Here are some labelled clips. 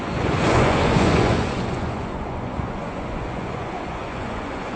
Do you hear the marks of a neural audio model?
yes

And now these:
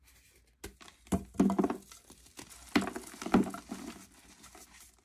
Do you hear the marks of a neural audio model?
no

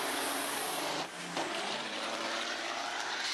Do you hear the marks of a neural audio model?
yes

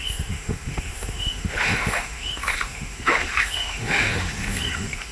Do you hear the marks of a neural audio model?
yes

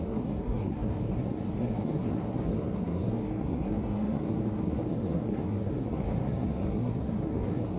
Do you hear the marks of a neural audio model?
yes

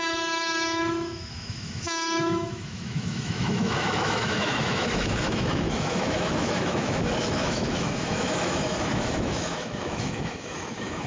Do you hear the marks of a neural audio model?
yes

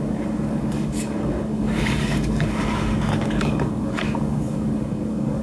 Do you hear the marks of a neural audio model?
yes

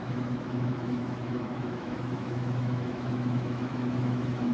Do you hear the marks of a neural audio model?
yes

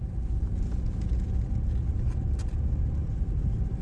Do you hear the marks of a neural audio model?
no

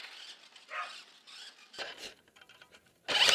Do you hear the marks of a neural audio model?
no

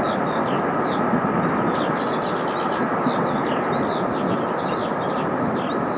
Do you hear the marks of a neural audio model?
no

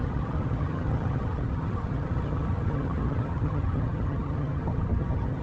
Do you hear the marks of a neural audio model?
yes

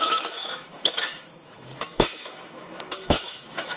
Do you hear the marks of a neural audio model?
yes